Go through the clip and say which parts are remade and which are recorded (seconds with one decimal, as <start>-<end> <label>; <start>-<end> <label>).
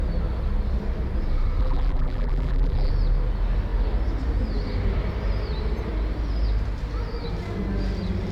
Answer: 0.0-1.6 recorded; 1.6-2.9 remade; 2.9-8.3 recorded